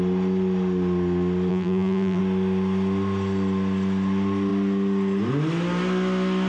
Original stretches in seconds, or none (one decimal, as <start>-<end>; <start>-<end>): 0.0-1.5; 2.2-6.5